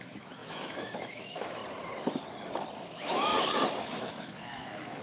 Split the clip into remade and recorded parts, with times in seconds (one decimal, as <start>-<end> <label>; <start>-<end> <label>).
0.0-1.6 remade; 1.6-2.8 recorded; 2.8-3.3 remade; 3.3-3.8 recorded; 3.8-5.0 remade